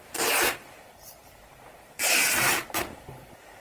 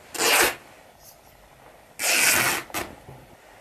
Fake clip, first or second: first